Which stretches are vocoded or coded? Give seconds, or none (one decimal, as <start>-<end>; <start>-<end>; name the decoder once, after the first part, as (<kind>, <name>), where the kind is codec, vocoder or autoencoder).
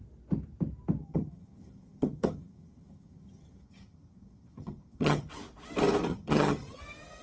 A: 1.0-5.3 (vocoder, HiFi-GAN); 6.1-6.8